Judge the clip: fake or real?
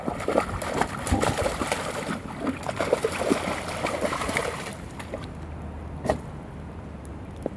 real